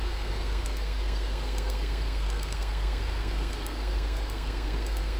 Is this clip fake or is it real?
fake